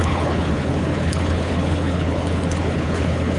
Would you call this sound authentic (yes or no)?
no